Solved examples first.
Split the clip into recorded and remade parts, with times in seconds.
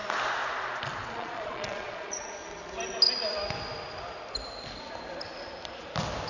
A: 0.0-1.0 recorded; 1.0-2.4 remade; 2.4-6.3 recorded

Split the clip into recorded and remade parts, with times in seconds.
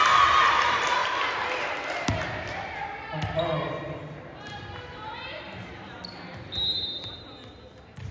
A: 0.0-8.1 recorded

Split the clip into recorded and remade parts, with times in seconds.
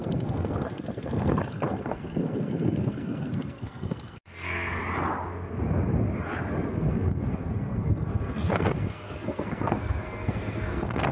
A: 0.0-4.8 remade; 4.8-6.7 recorded; 6.7-11.1 remade